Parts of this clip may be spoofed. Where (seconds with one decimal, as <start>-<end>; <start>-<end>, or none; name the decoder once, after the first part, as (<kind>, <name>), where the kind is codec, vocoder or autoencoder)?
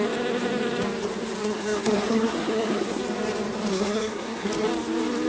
1.4-3.0 (codec, SNAC); 3.7-4.5